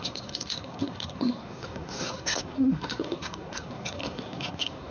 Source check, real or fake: fake